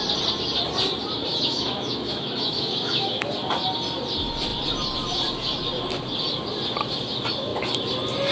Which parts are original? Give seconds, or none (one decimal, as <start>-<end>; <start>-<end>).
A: 0.0-1.3; 3.3-8.3